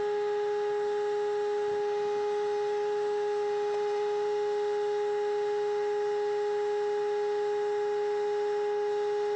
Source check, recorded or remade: recorded